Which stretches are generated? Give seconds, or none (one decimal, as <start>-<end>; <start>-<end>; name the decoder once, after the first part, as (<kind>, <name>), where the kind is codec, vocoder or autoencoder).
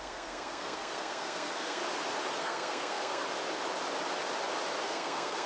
0.0-1.8 (codec, SNAC); 2.4-3.2; 4.8-5.5